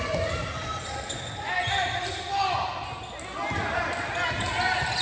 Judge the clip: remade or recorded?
recorded